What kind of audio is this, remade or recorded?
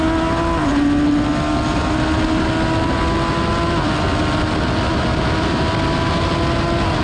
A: recorded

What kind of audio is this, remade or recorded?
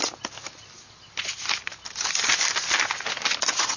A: recorded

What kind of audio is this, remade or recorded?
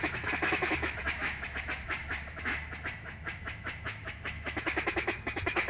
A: remade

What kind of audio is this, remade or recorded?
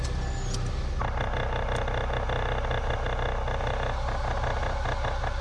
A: recorded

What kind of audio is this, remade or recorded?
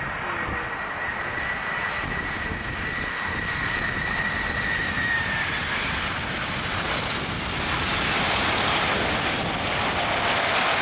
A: recorded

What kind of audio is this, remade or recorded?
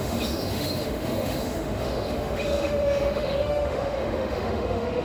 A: remade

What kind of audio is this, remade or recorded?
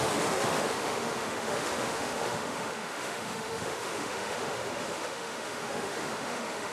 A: remade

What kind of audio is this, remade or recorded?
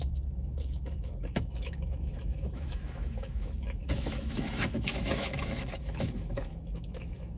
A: remade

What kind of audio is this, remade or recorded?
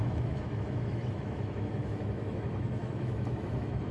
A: remade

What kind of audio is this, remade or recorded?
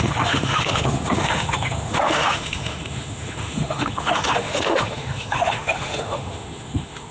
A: remade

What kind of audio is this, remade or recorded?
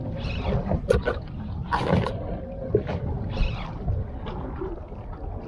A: recorded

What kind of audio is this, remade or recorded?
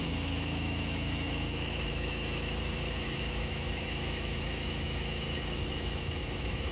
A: remade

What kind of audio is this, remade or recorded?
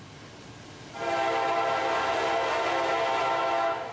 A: recorded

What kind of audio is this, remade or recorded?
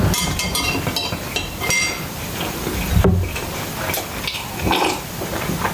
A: recorded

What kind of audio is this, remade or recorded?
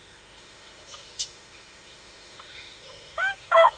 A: remade